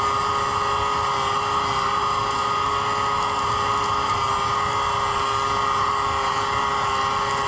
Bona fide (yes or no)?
yes